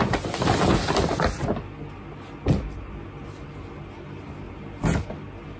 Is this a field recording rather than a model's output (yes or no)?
yes